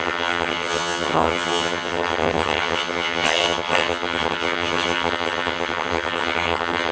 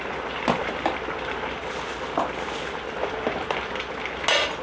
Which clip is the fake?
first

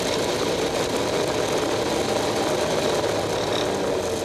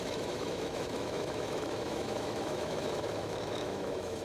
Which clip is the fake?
second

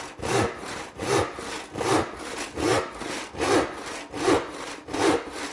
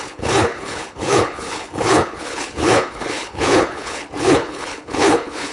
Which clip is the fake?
second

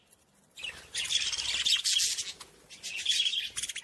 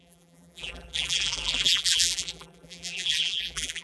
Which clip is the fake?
second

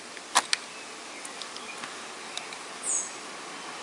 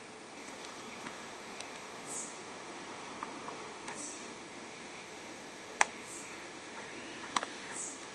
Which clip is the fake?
second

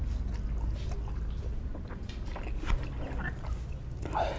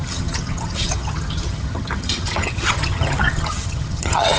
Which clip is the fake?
second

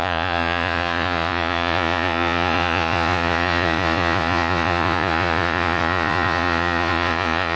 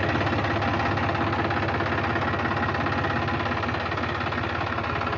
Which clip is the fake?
first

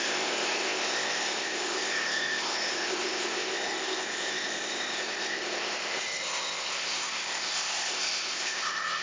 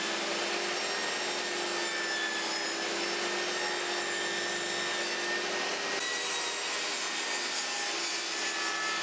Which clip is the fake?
first